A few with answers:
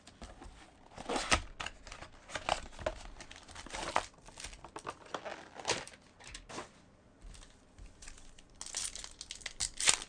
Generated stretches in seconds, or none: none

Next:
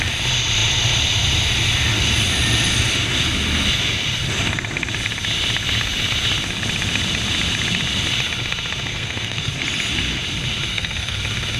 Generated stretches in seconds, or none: 8.9-9.5 (codec, SNAC); 10.7-11.2

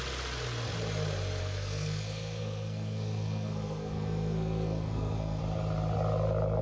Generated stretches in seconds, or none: 1.4-5.4 (codec, SNAC)

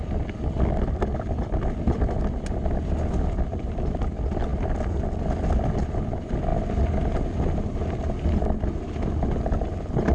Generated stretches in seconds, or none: none

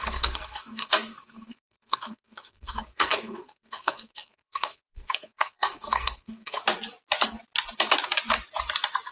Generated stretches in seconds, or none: 0.0-6.6 (codec, SNAC)

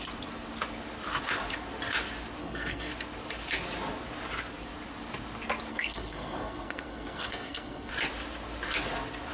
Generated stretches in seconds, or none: 2.4-2.9 (codec, SNAC); 5.7-7.9

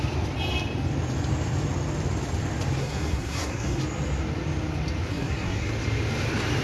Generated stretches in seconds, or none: 2.8-3.8 (codec, SNAC); 5.1-5.7